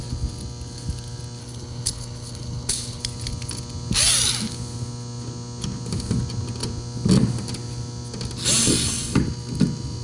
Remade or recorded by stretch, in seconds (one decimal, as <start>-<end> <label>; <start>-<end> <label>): 0.0-1.4 recorded; 1.4-3.0 remade; 3.0-10.0 recorded